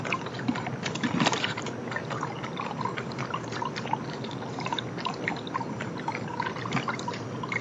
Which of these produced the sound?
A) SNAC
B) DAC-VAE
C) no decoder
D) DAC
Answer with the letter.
C